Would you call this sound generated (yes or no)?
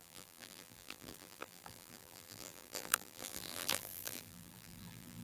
yes